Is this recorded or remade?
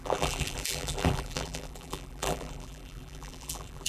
remade